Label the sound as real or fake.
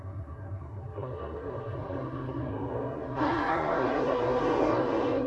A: fake